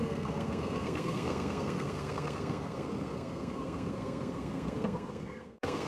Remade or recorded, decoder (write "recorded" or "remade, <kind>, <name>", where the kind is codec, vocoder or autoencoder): remade, codec, SNAC